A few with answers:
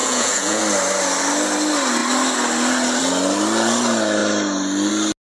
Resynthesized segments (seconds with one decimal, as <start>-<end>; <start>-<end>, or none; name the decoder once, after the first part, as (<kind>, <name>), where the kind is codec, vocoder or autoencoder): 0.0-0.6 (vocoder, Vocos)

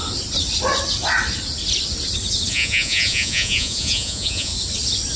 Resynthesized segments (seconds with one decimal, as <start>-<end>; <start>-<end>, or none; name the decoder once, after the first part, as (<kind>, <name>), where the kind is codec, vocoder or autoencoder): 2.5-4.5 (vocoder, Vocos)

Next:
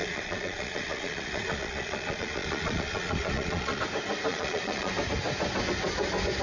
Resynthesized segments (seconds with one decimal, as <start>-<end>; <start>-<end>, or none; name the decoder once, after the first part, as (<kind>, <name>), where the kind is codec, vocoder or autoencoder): 0.0-3.8 (vocoder, Vocos); 4.3-4.9